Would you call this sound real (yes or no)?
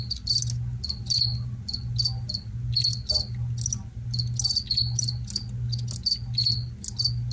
yes